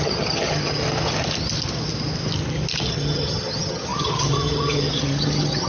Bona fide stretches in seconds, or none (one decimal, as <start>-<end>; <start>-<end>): 0.8-2.9